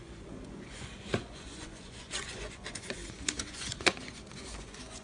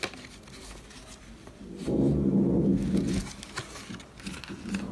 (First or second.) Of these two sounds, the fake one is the first